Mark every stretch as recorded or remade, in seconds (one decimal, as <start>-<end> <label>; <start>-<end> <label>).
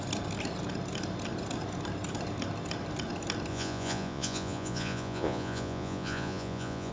0.0-3.5 recorded; 3.5-6.9 remade